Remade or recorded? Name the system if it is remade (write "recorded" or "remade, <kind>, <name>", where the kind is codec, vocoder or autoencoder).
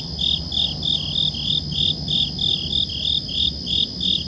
recorded